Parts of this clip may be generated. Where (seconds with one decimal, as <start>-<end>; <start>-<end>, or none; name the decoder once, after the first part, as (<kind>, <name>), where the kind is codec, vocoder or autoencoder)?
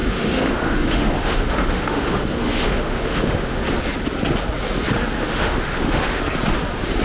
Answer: 0.0-3.6 (autoencoder, DAC-VAE); 5.2-6.2